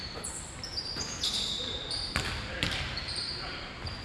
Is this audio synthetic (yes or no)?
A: yes